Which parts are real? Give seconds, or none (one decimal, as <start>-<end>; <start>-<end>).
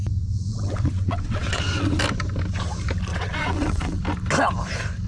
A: 0.0-0.5; 2.0-3.1; 4.0-5.1